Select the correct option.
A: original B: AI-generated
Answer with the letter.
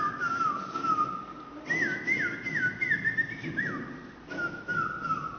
A